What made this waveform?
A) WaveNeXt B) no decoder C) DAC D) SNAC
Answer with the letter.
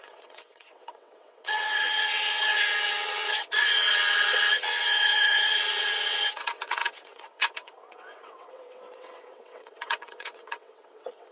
A